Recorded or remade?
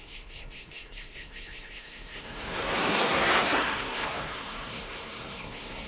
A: remade